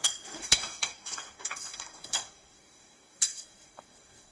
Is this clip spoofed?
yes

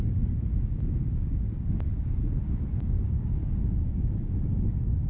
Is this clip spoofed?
yes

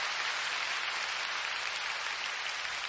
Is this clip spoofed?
no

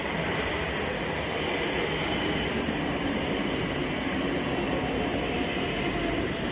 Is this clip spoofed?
no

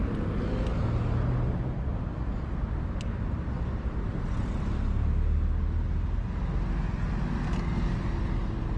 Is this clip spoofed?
no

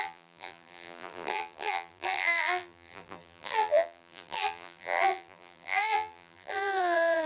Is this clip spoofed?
yes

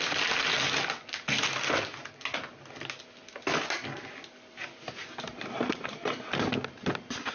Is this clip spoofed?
no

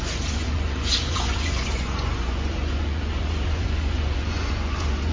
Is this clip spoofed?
yes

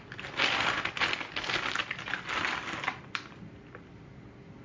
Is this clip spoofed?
no